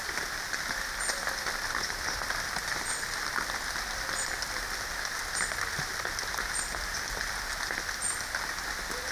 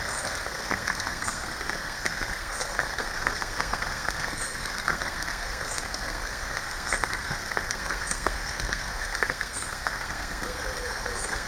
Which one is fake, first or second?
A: second